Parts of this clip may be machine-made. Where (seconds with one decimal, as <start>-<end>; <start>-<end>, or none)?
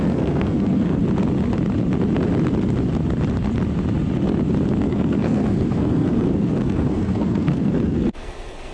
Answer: 0.0-1.0; 4.9-8.7